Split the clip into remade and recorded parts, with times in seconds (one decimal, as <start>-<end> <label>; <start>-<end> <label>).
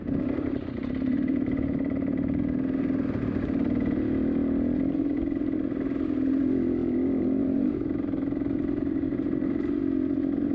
0.0-0.8 recorded; 0.8-2.4 remade; 2.4-6.8 recorded; 6.8-9.8 remade; 9.8-10.5 recorded